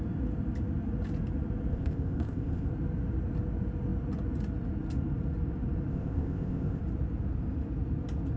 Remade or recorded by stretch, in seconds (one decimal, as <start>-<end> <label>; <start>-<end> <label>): 0.0-1.7 recorded; 1.7-2.7 remade; 2.7-5.9 recorded; 5.9-6.8 remade; 6.8-8.4 recorded